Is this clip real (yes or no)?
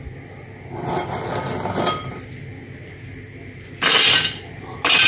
yes